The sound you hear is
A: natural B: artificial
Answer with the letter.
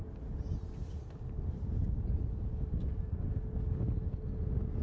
A